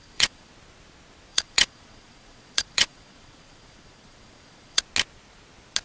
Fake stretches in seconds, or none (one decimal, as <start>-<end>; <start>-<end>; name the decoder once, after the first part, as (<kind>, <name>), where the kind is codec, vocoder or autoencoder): 0.0-0.5 (vocoder, Vocos); 1.3-4.8

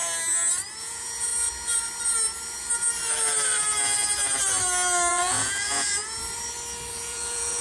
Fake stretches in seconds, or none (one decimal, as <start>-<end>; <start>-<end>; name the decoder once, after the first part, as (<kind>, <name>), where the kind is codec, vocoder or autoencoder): 0.8-1.3 (vocoder, Vocos); 5.1-6.2; 6.9-7.6

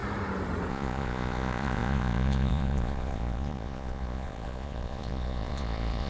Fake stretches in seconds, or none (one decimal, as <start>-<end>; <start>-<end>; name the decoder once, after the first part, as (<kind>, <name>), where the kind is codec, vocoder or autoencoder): 0.7-6.1 (vocoder, Vocos)

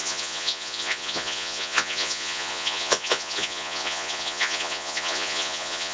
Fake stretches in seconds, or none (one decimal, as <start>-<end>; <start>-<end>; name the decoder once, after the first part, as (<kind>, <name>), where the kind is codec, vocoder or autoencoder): 0.0-5.9 (vocoder, Vocos)

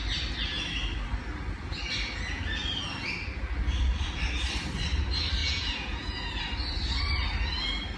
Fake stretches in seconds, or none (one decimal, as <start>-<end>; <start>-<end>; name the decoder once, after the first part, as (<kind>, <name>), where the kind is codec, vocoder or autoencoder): 5.4-6.4 (vocoder, Vocos)

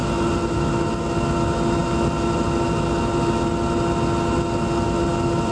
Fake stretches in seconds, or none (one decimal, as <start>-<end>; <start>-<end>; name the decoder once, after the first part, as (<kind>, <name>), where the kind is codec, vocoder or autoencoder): none